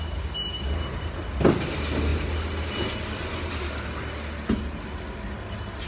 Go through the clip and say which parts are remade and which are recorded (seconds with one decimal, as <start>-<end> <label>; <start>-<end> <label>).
0.0-5.9 recorded